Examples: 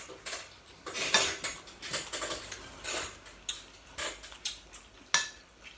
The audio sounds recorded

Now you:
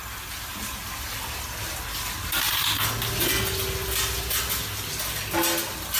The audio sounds recorded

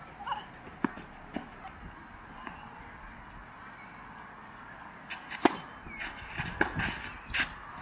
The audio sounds recorded